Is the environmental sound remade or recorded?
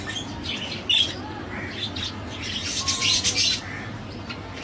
recorded